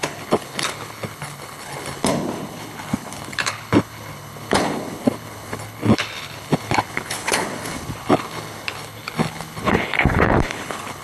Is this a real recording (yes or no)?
no